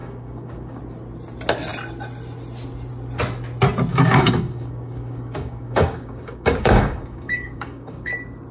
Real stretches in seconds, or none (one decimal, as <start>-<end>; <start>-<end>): 0.8-3.9; 8.1-8.5